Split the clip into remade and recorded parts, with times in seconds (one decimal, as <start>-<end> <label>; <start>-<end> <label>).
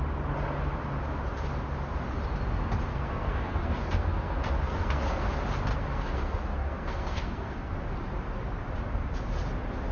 0.0-2.9 recorded; 2.9-5.3 remade; 5.3-5.7 recorded; 5.7-7.7 remade; 7.7-9.9 recorded